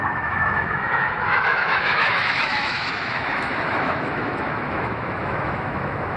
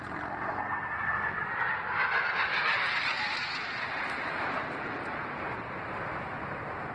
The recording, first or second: second